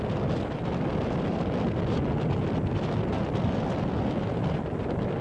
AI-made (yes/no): no